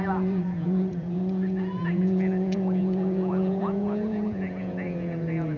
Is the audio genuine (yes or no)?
no